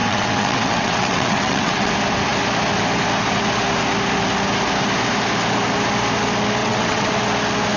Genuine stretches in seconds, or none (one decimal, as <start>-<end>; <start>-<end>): 1.9-6.6; 7.1-7.8